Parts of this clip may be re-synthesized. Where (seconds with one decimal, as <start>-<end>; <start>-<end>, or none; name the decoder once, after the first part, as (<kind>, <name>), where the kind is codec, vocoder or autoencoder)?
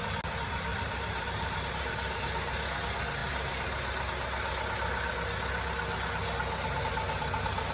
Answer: 0.7-1.7 (vocoder, BigVGAN v2)